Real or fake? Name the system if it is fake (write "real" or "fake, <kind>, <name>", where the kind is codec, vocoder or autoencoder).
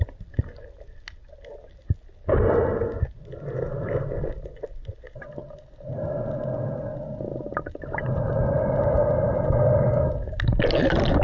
real